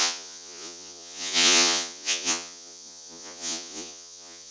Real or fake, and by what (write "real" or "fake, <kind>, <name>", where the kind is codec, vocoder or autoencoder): fake, vocoder, Vocos